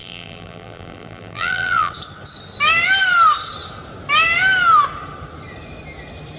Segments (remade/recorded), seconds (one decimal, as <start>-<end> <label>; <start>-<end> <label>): 0.0-1.9 remade; 1.9-6.4 recorded